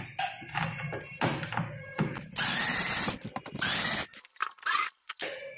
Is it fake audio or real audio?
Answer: real